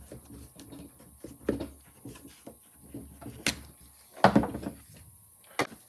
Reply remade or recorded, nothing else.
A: recorded